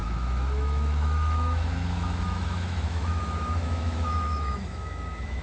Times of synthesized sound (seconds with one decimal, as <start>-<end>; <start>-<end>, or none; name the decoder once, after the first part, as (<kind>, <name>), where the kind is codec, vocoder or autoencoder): 0.0-5.4 (autoencoder, DAC-VAE)